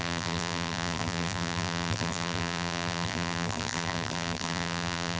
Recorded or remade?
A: remade